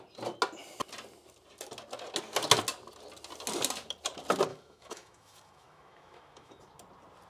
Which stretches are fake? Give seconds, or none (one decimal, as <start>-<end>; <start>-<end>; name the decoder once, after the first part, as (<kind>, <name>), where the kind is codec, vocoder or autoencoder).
4.5-6.6 (autoencoder, DAC-VAE)